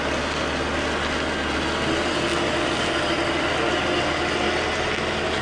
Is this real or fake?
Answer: real